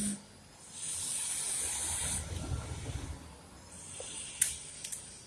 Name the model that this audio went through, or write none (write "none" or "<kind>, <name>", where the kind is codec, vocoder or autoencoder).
none